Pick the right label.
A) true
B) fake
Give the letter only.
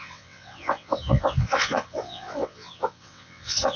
B